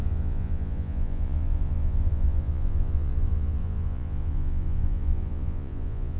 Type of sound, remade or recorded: remade